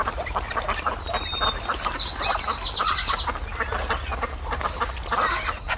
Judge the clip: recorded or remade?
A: recorded